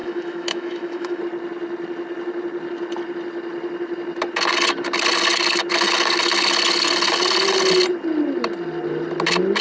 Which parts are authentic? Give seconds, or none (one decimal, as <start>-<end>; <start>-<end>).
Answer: 1.2-9.6